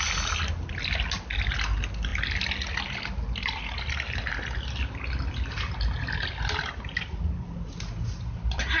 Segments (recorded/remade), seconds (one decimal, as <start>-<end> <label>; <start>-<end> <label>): 0.0-8.8 recorded